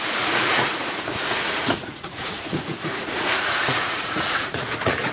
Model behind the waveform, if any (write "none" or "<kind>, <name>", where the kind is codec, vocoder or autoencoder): vocoder, Vocos